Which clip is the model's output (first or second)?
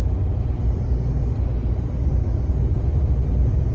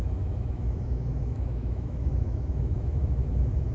second